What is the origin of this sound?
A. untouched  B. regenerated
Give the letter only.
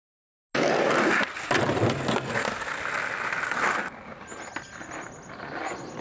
A